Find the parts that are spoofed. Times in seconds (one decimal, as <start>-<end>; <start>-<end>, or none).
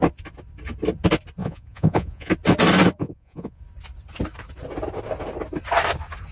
1.4-2.3; 3.0-3.6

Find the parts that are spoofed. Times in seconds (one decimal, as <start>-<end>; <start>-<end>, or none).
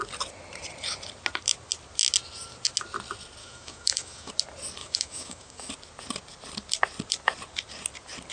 3.4-4.3; 4.8-5.7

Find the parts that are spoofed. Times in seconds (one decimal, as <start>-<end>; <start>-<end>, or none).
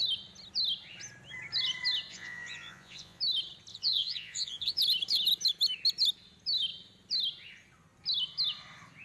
2.1-3.2; 3.7-4.8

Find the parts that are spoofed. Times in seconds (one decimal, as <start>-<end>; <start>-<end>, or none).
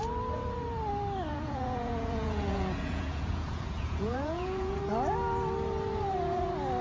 1.3-4.8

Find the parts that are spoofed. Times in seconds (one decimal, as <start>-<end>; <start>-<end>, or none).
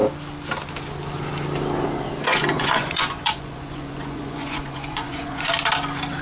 2.3-5.5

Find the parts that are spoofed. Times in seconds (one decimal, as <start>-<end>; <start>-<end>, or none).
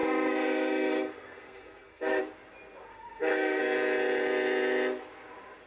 0.0-2.2; 2.9-3.6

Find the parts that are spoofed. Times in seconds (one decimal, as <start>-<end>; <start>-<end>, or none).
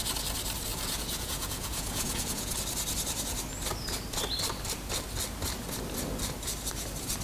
0.7-2.5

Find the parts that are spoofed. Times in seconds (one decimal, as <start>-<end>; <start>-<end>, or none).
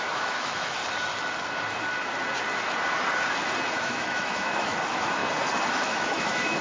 0.0-0.8; 3.8-5.2; 5.7-6.6